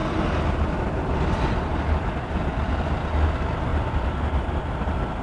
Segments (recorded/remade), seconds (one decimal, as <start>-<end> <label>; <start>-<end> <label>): 0.0-5.2 recorded